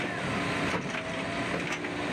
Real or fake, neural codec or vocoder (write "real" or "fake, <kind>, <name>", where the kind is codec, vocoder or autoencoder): real